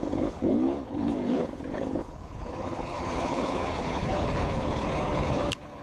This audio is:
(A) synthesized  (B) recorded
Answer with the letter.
A